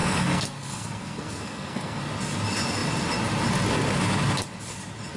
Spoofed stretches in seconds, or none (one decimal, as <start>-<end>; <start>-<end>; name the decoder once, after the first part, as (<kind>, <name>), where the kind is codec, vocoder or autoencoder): 0.0-2.0 (codec, SNAC)

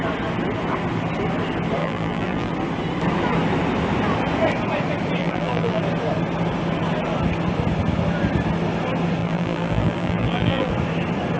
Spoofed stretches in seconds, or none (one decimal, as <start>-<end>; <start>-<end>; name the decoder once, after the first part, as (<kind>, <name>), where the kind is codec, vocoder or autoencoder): 1.8-2.5 (vocoder, BigVGAN v2); 5.2-5.8; 9.2-10.7

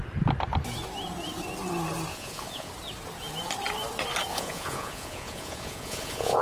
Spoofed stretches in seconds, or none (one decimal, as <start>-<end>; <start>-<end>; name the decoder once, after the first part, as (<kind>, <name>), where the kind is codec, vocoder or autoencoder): 2.1-2.7 (vocoder, Vocos); 4.3-6.4

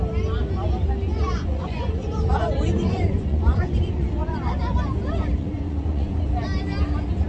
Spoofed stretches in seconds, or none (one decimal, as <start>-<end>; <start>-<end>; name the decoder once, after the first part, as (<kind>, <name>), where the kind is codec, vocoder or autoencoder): 1.1-4.4 (vocoder, Vocos); 5.4-6.2

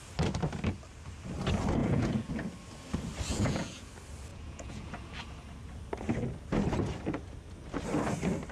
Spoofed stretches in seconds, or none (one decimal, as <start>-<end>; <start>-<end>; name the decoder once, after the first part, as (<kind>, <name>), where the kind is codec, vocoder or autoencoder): 1.8-2.3 (vocoder, Vocos); 3.3-3.9; 4.3-4.9